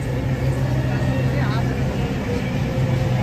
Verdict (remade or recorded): recorded